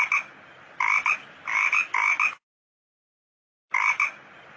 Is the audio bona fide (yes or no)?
yes